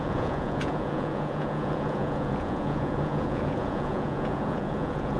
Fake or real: fake